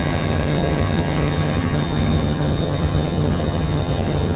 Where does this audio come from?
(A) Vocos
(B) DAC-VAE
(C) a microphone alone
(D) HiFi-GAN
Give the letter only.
D